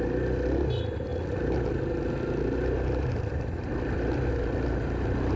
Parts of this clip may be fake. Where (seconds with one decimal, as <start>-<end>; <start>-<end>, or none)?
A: none